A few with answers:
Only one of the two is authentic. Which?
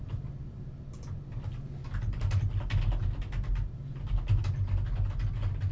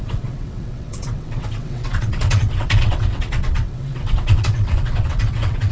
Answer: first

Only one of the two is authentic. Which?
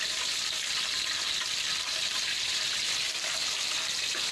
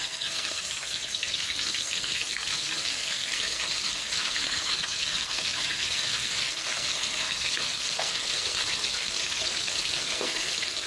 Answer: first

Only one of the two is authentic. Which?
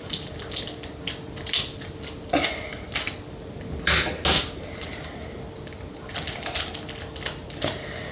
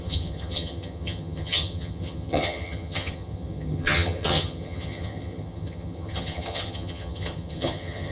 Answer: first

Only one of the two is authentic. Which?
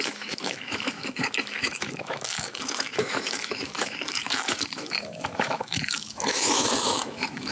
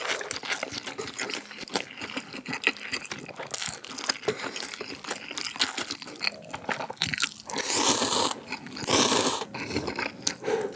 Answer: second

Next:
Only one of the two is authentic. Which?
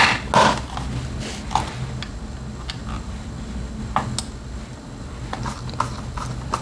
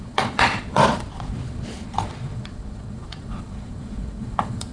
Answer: first